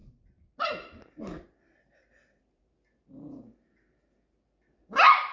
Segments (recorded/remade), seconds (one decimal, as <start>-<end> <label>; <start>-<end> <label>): 0.0-5.3 recorded